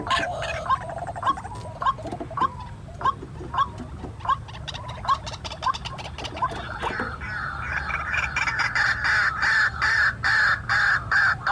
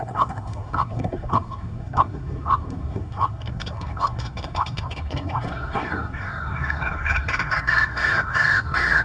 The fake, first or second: second